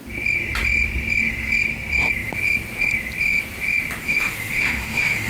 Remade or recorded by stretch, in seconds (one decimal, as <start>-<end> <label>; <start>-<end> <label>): 0.0-4.0 recorded; 4.0-5.3 remade